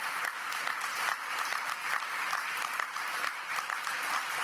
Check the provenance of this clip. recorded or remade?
remade